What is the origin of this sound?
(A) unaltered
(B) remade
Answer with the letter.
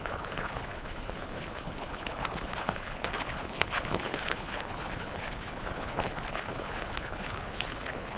B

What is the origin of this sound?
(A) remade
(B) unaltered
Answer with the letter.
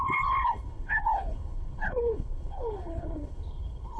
A